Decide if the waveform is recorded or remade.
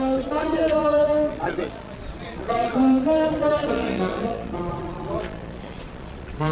remade